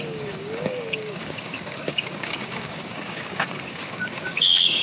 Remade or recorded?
remade